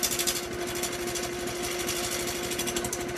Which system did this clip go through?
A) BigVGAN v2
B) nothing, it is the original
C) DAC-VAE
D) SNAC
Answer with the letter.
B